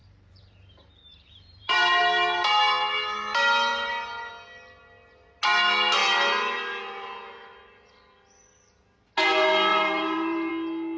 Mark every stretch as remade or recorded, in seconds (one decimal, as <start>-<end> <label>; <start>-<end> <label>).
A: 0.0-2.0 remade; 2.0-3.7 recorded; 3.7-4.3 remade; 4.3-9.7 recorded; 9.7-10.5 remade; 10.5-11.0 recorded